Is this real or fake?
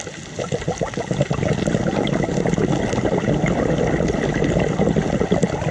real